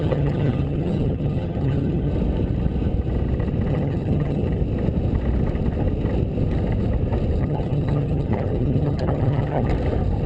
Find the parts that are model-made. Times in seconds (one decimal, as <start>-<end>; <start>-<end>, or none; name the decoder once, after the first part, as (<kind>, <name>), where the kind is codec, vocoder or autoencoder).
0.0-2.1 (vocoder, HiFi-GAN); 3.7-4.6; 7.4-9.7